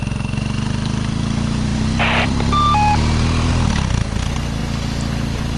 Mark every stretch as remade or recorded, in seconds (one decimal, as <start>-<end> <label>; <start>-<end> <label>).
0.0-1.7 recorded; 1.7-3.5 remade; 3.5-5.6 recorded